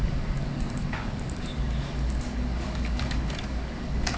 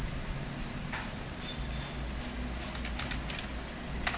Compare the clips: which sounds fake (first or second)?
first